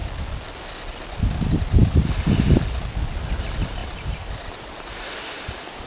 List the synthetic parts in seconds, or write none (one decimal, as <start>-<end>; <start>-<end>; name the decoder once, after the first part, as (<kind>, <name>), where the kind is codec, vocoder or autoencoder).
3.8-5.1 (vocoder, BigVGAN v2)

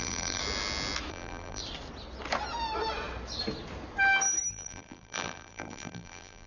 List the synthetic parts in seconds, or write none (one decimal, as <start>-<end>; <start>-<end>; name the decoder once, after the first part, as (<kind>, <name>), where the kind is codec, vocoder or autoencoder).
0.0-0.4 (vocoder, BigVGAN v2); 1.1-1.6; 4.5-6.5

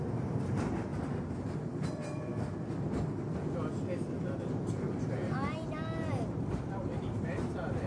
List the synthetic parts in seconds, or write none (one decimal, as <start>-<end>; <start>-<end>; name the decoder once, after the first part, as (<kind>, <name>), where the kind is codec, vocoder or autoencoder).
0.0-0.9 (vocoder, BigVGAN v2); 1.9-2.3; 4.7-7.9

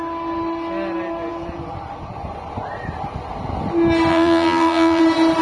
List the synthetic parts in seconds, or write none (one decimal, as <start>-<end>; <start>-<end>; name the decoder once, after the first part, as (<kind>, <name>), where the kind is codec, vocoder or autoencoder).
4.1-5.0 (vocoder, BigVGAN v2)

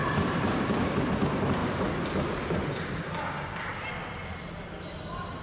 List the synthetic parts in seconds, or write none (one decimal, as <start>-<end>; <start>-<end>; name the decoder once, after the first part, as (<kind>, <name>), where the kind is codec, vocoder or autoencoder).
0.0-1.1 (vocoder, BigVGAN v2); 1.6-2.6; 3.7-4.6

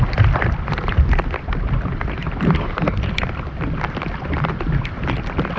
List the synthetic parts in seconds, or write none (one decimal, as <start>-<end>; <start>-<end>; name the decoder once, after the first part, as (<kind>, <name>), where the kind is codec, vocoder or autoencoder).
0.0-5.6 (vocoder, BigVGAN v2)